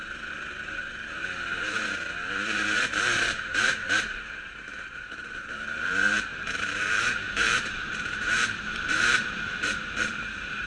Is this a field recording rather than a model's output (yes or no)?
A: no